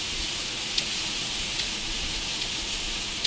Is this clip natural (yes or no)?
no